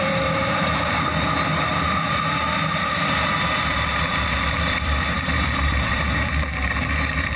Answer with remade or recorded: remade